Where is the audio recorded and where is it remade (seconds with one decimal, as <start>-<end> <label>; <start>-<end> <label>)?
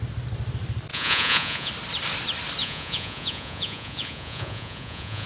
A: 0.0-0.9 recorded; 0.9-1.7 remade; 1.7-2.6 recorded; 2.6-5.3 remade